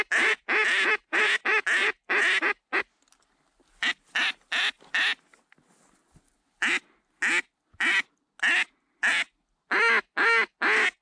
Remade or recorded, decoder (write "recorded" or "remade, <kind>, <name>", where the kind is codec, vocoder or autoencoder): recorded